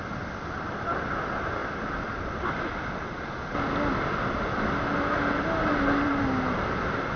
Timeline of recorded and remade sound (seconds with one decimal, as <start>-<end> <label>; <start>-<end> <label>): 0.0-7.2 recorded